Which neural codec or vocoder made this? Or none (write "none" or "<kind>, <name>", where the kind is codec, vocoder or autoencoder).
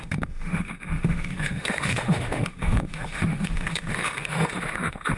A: autoencoder, DAC-VAE